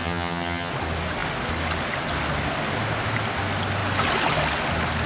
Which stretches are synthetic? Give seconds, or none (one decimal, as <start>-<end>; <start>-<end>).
0.0-0.7